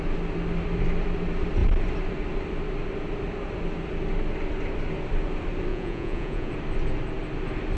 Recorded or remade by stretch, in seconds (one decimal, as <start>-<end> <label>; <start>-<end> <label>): 0.0-5.7 recorded; 5.7-6.5 remade; 6.5-7.8 recorded